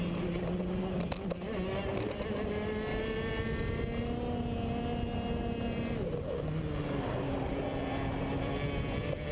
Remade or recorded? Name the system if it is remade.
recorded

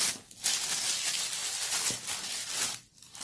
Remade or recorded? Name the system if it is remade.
recorded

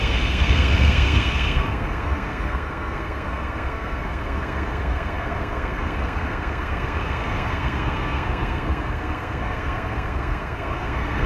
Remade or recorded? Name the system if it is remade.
remade, codec, SNAC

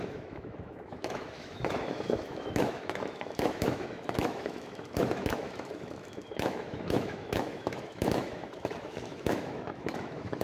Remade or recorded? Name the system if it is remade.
remade, autoencoder, DAC-VAE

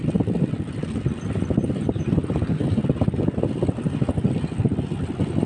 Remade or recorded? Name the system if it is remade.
recorded